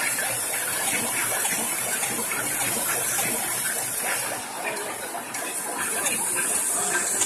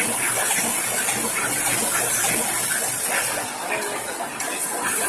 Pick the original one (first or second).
second